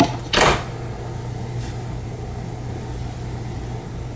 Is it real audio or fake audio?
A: real